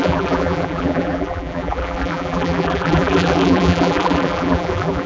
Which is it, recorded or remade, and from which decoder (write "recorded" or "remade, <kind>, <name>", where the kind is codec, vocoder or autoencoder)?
remade, vocoder, BigVGAN v2